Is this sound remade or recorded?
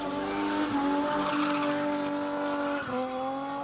recorded